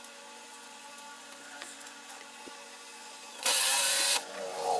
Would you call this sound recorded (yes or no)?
no